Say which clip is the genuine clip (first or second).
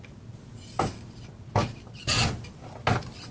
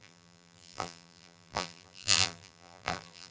first